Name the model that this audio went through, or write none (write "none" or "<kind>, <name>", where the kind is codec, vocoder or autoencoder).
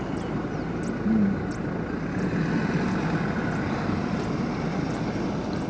none